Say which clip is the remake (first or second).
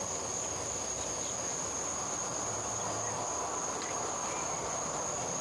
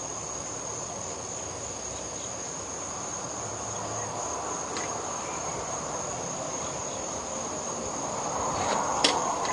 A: second